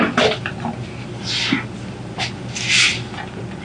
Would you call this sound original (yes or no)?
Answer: yes